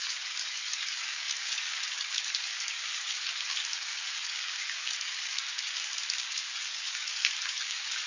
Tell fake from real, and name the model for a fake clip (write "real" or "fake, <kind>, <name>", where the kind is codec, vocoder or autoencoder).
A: fake, codec, DAC